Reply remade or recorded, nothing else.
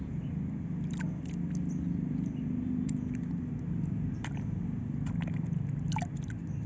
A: recorded